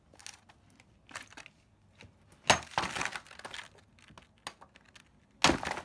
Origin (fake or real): real